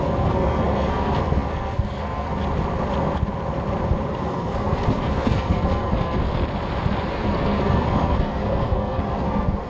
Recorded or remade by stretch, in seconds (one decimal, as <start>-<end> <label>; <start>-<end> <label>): 0.0-2.4 remade; 2.4-4.1 recorded; 4.1-6.4 remade; 6.4-7.1 recorded; 7.1-9.7 remade